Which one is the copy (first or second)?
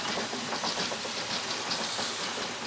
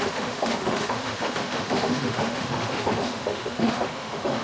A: second